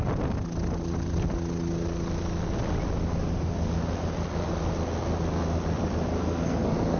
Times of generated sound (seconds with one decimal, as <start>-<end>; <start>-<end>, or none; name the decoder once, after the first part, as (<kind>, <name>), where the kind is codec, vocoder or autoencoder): 6.2-7.0 (codec, SNAC)